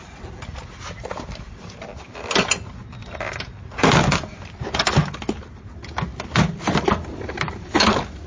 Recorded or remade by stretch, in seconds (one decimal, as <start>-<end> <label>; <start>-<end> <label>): 0.0-8.3 recorded